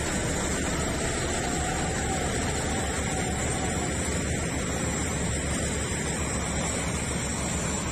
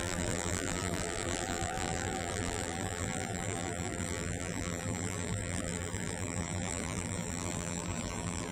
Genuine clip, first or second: first